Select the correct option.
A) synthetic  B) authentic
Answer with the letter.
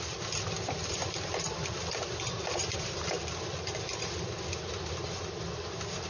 B